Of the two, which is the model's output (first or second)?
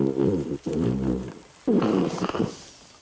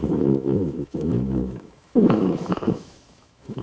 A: second